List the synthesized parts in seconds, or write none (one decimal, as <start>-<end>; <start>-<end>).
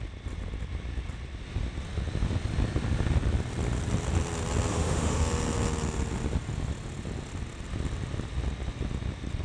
4.7-5.2